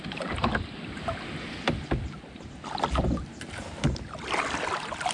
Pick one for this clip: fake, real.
real